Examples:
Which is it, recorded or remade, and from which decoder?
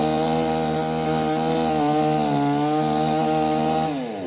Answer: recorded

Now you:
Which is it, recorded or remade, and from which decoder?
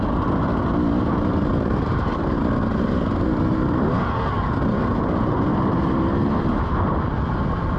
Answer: recorded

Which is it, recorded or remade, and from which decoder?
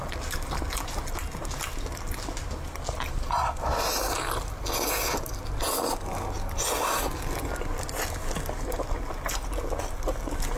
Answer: recorded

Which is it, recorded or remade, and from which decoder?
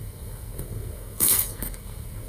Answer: remade, codec, SNAC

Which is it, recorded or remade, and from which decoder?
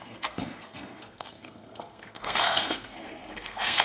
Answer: remade, codec, SNAC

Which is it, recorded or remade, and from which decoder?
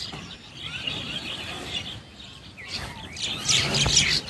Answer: recorded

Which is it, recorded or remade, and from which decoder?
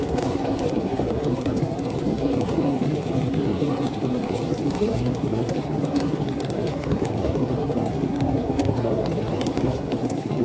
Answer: remade, codec, SNAC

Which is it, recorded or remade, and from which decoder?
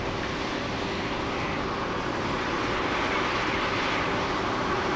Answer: recorded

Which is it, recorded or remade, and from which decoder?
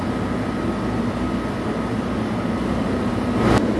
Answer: recorded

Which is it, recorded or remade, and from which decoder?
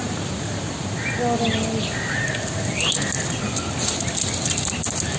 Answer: recorded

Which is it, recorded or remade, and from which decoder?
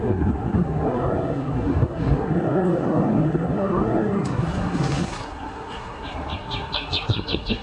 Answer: remade, codec, SNAC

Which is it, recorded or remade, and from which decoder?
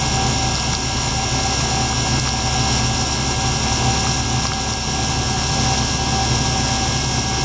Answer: recorded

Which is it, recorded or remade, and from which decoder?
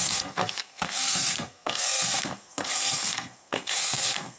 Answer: remade, codec, SNAC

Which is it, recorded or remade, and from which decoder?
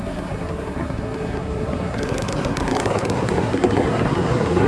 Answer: remade, codec, SNAC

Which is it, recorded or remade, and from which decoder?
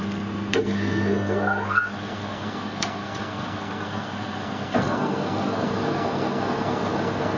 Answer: remade, codec, SNAC